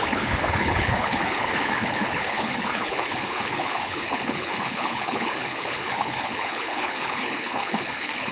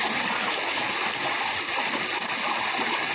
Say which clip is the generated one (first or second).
first